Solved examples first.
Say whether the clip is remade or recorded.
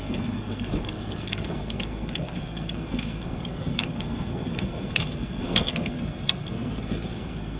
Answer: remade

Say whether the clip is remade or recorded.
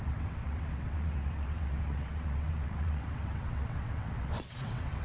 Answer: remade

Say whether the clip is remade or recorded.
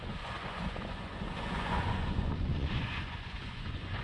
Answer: remade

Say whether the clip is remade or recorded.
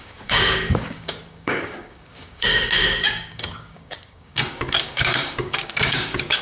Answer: remade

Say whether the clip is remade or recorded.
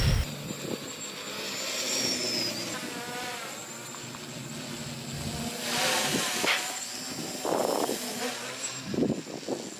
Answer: recorded